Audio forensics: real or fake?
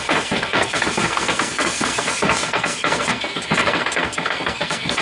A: fake